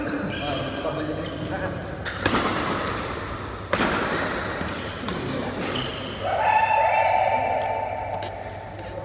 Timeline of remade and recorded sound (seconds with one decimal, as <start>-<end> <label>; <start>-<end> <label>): 0.0-2.5 recorded; 2.5-3.1 remade; 3.1-9.0 recorded